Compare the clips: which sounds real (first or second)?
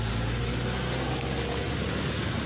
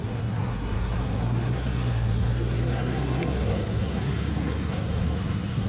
first